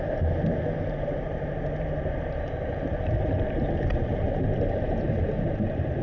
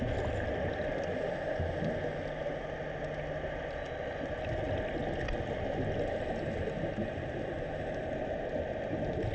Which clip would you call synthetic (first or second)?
first